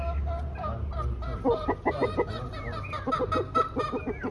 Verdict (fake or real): real